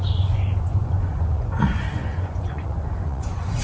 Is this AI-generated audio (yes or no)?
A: yes